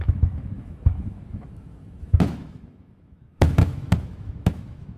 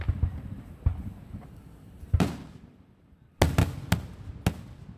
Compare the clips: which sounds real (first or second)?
second